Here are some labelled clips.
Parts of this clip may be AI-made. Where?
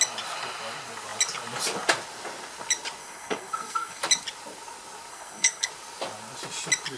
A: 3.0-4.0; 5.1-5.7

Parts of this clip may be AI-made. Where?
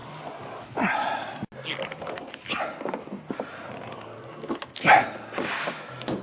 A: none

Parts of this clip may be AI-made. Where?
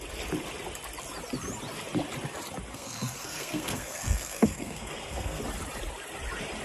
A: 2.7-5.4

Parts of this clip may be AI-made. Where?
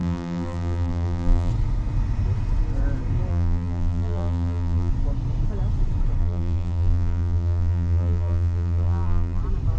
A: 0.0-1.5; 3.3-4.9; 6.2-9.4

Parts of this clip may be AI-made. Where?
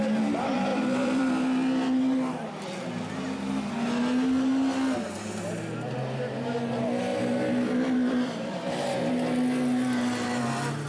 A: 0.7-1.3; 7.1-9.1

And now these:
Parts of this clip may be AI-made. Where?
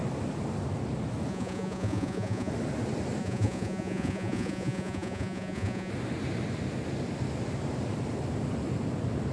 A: 1.3-2.5; 3.2-5.9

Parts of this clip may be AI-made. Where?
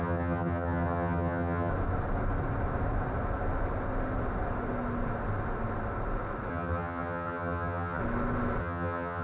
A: 0.0-1.7; 6.5-8.0; 8.6-9.2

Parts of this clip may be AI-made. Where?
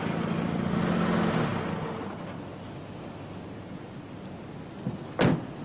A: none